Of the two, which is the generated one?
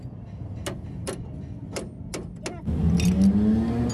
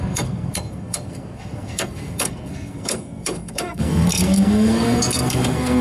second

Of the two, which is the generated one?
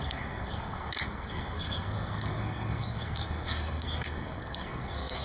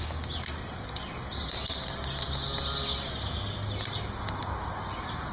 first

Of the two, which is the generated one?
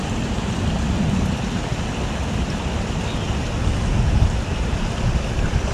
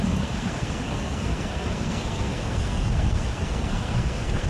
second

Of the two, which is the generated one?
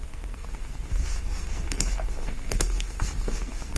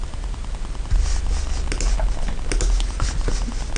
first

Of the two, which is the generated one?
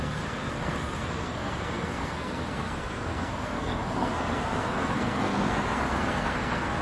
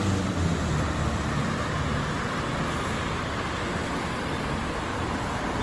first